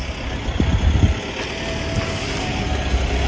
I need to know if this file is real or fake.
real